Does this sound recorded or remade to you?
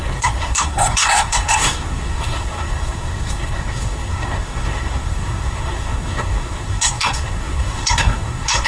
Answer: remade